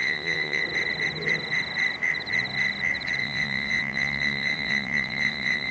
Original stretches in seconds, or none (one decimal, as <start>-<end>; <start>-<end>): 0.6-3.2